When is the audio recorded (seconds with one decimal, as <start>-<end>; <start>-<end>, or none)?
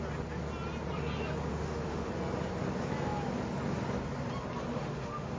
0.0-1.5; 2.1-4.7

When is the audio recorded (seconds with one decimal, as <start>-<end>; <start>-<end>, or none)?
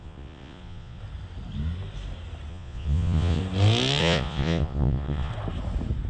1.0-2.5; 3.4-4.0; 5.3-6.1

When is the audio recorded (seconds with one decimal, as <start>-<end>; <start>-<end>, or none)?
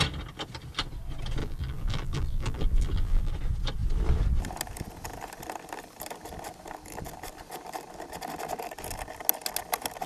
0.0-1.4; 3.3-10.1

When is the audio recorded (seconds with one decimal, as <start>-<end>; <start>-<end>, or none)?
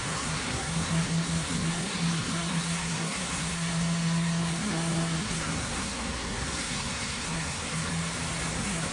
7.9-8.5